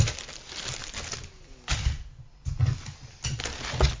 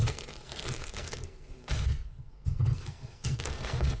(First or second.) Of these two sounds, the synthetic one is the second